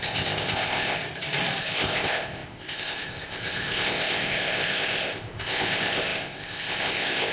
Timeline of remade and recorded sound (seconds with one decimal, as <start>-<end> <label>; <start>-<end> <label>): 0.0-1.0 remade; 1.0-1.6 recorded; 1.6-7.3 remade